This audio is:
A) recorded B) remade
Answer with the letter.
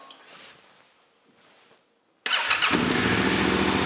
A